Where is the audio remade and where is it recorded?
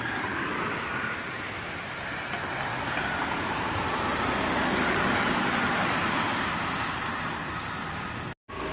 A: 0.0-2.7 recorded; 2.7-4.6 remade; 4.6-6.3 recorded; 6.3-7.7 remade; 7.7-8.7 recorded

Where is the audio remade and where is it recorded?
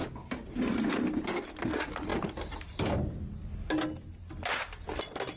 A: 0.0-2.1 recorded; 2.1-3.0 remade; 3.0-5.4 recorded